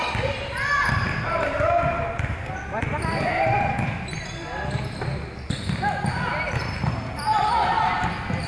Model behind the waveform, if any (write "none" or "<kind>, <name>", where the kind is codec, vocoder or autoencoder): none